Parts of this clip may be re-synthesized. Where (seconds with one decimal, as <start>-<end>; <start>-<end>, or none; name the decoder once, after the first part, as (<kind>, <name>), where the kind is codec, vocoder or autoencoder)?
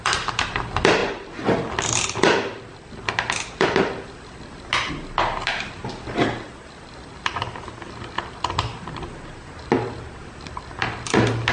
none